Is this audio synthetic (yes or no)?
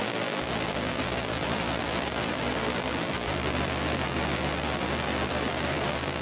yes